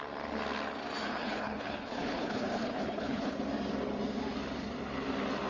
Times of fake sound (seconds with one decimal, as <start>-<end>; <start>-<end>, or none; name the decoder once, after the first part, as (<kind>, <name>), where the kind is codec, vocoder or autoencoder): 1.2-3.4 (codec, HILCodec)